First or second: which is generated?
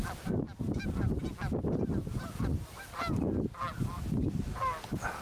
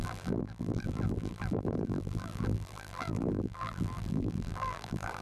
second